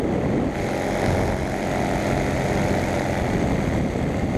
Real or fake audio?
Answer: real